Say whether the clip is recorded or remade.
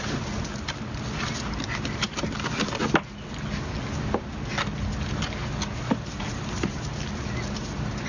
recorded